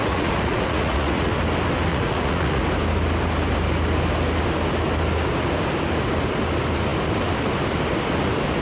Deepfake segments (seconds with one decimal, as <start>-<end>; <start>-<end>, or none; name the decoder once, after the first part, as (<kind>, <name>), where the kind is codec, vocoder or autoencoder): 0.0-1.3 (vocoder, Vocos); 1.9-2.6